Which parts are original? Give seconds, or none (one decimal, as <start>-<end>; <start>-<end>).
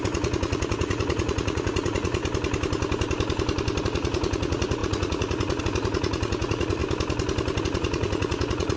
2.2-3.8; 6.8-7.6